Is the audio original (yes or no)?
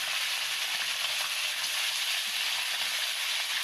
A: yes